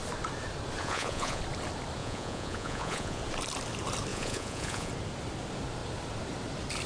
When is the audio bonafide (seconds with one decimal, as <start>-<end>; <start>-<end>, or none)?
0.0-0.8; 1.4-2.0; 3.2-4.1; 4.9-6.9